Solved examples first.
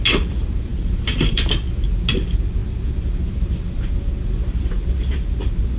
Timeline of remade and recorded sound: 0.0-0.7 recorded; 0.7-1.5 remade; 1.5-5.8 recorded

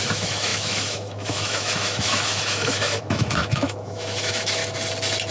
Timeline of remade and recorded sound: 0.0-4.6 remade; 4.6-5.3 recorded

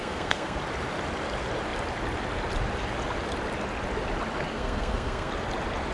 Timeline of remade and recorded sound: 0.0-0.6 remade; 0.6-4.5 recorded; 4.5-5.3 remade; 5.3-5.9 recorded

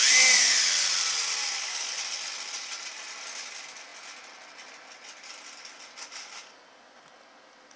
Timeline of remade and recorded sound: 0.0-7.8 recorded

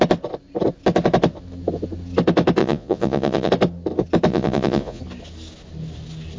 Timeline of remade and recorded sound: 0.0-2.6 recorded; 2.6-3.5 remade; 3.5-4.3 recorded; 4.3-5.0 remade; 5.0-6.4 recorded